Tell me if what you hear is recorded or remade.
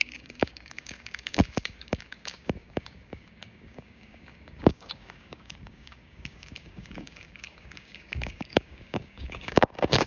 remade